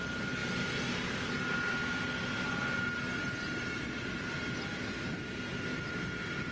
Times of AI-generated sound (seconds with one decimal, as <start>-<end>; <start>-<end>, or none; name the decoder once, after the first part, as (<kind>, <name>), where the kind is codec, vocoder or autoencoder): none